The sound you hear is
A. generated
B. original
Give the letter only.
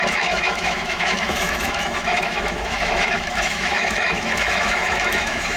A